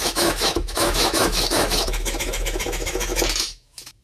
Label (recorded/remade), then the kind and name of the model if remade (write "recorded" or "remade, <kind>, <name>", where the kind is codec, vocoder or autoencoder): remade, autoencoder, DAC-VAE